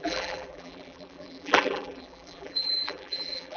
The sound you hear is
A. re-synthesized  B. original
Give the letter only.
A